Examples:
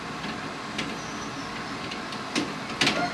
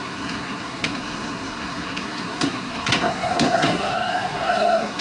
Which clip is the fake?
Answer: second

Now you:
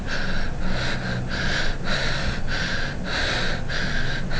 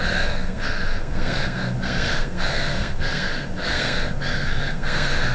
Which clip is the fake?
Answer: second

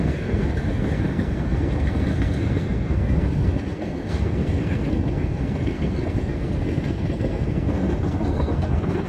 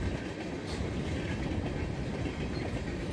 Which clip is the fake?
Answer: first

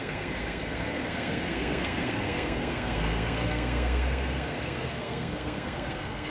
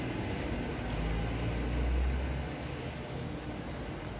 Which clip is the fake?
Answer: first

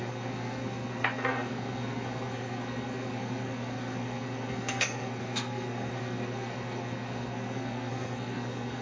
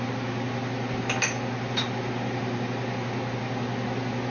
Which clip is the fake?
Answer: first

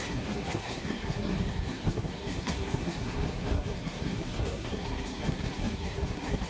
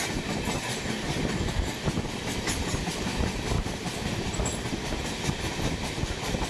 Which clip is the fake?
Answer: first